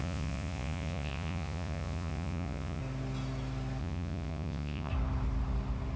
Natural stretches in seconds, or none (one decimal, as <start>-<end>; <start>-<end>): 2.8-3.8; 4.9-6.0